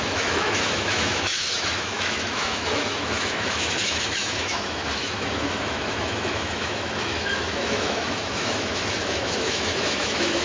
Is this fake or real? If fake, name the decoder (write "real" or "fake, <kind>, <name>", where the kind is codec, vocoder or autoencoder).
fake, autoencoder, DAC-VAE